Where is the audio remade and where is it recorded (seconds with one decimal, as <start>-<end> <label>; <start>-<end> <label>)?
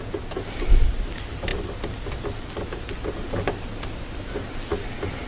0.0-5.3 recorded